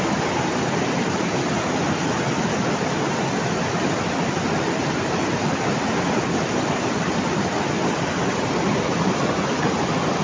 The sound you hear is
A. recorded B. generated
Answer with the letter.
A